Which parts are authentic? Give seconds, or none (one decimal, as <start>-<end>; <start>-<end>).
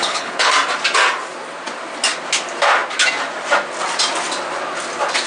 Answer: 0.5-5.3